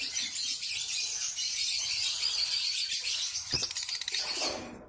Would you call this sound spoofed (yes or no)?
yes